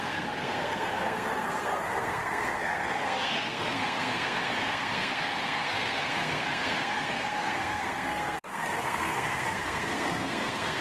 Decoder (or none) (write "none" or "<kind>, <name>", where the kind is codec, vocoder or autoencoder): codec, SNAC